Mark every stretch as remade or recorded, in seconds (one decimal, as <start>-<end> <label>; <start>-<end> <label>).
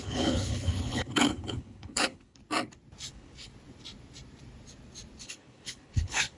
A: 0.0-2.4 remade; 2.4-3.1 recorded; 3.1-3.5 remade; 3.5-5.2 recorded; 5.2-6.4 remade